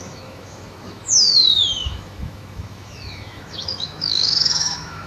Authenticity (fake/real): fake